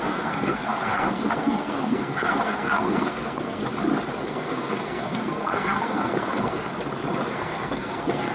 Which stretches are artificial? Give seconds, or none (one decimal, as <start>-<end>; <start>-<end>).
0.0-3.6; 4.2-6.7; 7.3-8.3